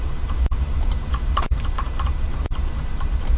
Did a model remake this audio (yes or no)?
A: yes